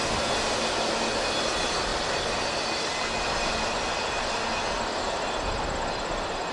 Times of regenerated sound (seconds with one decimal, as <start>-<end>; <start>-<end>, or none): none